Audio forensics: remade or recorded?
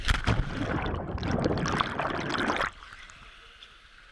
recorded